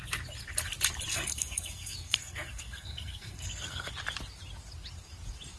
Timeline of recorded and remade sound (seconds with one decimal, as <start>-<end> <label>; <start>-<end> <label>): 0.0-1.1 recorded; 1.1-3.9 remade; 3.9-5.6 recorded